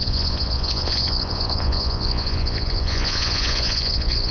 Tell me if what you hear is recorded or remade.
remade